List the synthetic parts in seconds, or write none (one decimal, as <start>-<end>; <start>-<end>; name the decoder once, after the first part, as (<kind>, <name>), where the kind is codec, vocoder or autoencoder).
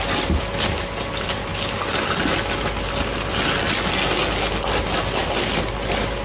none